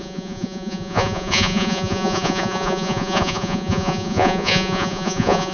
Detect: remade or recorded remade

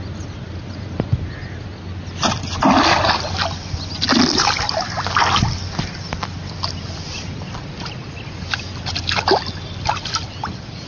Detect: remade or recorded recorded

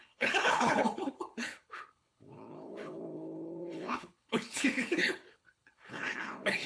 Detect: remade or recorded remade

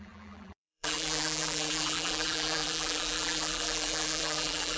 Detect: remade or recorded remade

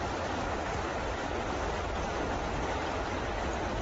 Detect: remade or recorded recorded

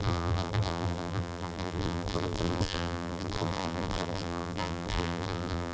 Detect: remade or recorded remade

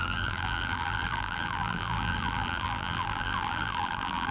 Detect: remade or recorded remade